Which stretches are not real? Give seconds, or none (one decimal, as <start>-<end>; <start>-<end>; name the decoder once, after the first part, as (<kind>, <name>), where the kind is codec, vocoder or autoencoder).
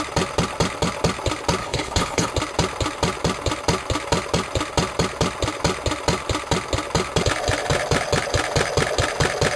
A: 1.6-2.3 (codec, HILCodec)